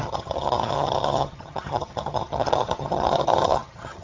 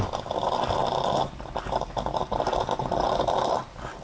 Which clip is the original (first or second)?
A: second